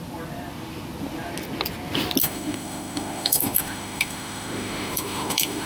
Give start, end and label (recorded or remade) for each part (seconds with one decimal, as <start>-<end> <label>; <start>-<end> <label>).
0.0-2.2 recorded; 2.2-5.7 remade